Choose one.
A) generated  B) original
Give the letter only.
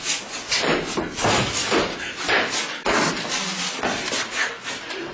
B